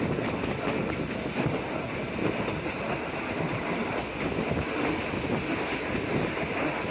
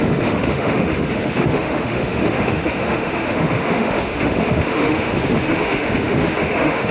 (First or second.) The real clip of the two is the first